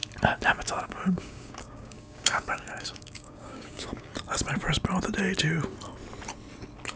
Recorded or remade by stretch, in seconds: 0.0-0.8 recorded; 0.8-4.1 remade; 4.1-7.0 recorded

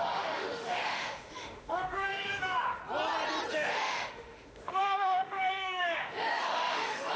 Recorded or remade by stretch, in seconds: 0.0-2.8 remade; 2.8-3.5 recorded; 3.5-7.2 remade

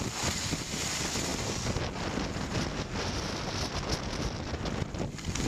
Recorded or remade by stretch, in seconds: 0.0-5.5 recorded

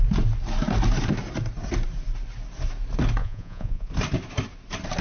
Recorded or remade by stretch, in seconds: 0.0-3.2 recorded; 3.2-3.9 remade; 3.9-5.0 recorded

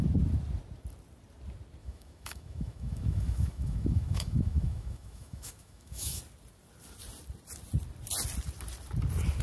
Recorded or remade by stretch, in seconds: 0.0-1.8 recorded; 1.8-6.2 remade; 6.2-9.4 recorded

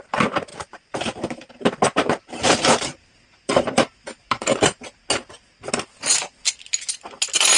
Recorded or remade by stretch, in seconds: 0.0-0.5 recorded; 0.5-5.1 remade; 5.1-7.6 recorded

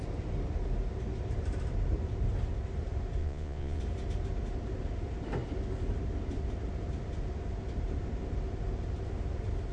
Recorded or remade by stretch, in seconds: 0.0-3.2 recorded; 3.2-3.8 remade; 3.8-9.7 recorded